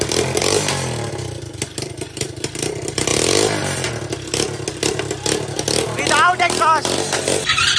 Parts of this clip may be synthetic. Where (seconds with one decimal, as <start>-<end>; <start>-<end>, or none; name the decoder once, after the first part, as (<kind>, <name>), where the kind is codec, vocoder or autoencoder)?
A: none